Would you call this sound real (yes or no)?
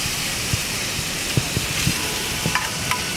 no